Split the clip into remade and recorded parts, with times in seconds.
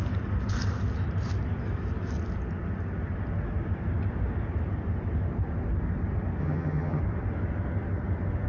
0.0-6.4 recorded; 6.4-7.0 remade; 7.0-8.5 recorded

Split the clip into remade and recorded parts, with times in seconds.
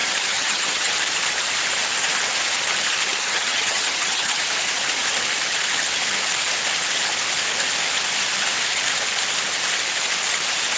0.0-0.9 remade; 0.9-3.1 recorded; 3.1-4.4 remade; 4.4-10.8 recorded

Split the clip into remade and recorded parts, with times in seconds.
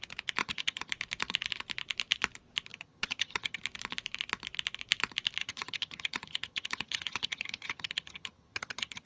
0.0-0.4 recorded; 0.4-0.9 remade; 0.9-2.7 recorded; 2.7-3.6 remade; 3.6-5.4 recorded; 5.4-9.1 remade